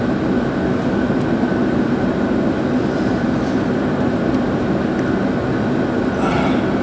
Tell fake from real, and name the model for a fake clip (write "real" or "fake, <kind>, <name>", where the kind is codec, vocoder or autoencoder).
real